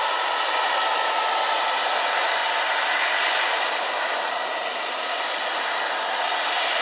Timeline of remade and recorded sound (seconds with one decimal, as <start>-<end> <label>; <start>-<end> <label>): 0.0-6.8 recorded

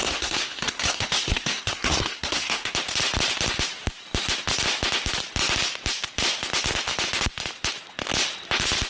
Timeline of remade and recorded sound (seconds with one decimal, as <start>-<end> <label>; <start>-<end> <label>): 0.0-2.7 remade; 2.7-8.9 recorded

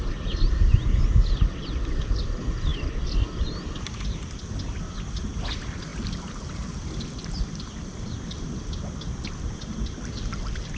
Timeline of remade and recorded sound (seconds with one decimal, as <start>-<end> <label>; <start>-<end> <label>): 0.0-1.2 recorded; 1.2-2.1 remade; 2.1-2.7 recorded; 2.7-4.4 remade; 4.4-5.9 recorded; 5.9-9.7 remade; 9.7-10.8 recorded

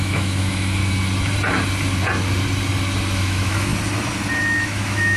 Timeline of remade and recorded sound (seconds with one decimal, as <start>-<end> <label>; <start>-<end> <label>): 0.0-0.8 remade; 0.8-3.2 recorded; 3.2-3.7 remade; 3.7-4.4 recorded; 4.4-5.2 remade